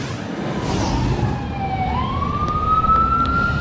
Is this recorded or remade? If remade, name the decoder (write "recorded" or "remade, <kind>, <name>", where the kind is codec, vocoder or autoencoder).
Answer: recorded